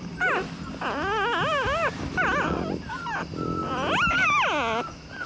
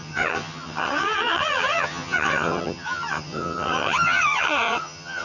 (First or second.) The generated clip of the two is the second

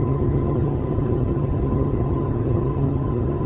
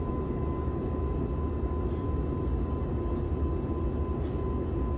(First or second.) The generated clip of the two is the first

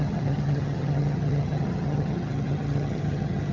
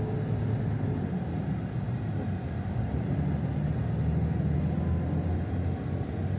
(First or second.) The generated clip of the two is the first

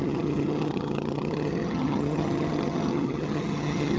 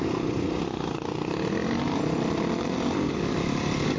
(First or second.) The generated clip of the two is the first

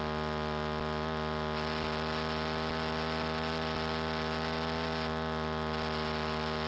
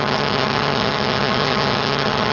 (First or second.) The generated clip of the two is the second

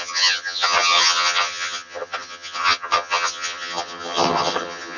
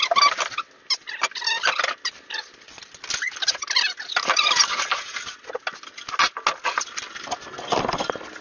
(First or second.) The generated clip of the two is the first